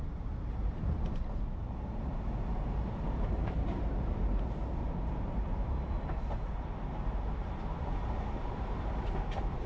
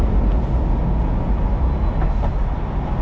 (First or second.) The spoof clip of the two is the first